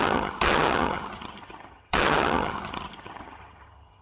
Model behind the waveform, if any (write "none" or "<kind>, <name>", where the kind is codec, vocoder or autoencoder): vocoder, HiFi-GAN